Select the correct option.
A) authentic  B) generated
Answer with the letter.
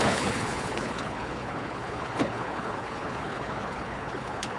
B